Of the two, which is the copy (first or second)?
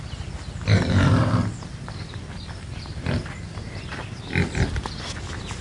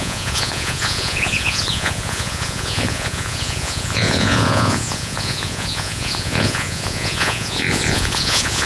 second